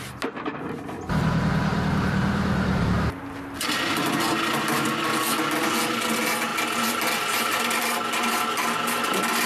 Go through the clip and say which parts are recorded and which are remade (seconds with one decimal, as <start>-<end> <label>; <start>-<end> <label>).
0.0-1.7 recorded; 1.7-3.2 remade; 3.2-6.5 recorded; 6.5-8.3 remade; 8.3-9.5 recorded